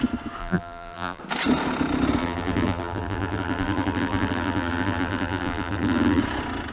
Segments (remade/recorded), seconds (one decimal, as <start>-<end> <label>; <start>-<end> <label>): 0.0-0.4 recorded; 0.4-1.2 remade; 1.2-2.2 recorded; 2.2-6.2 remade; 6.2-6.7 recorded

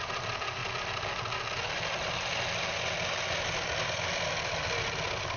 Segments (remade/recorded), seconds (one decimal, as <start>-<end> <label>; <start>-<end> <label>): 0.0-5.4 recorded

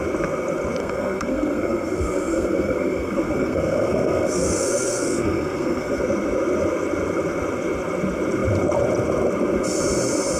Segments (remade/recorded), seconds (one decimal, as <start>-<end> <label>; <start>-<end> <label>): 0.0-0.8 recorded; 0.8-6.0 remade; 6.0-10.4 recorded